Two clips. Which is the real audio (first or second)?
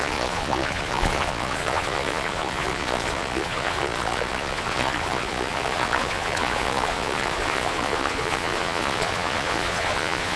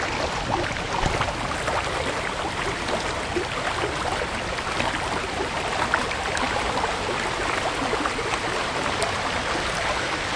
second